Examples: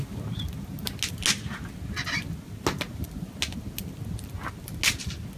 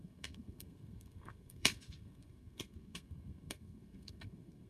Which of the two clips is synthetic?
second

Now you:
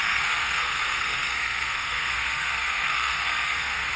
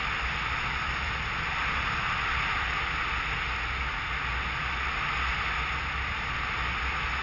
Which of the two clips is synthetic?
first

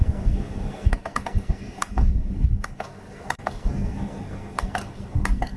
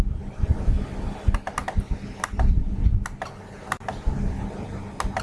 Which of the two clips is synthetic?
first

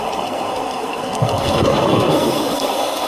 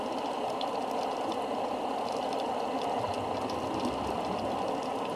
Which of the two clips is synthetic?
first